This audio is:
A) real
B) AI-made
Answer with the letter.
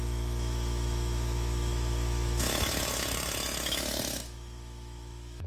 B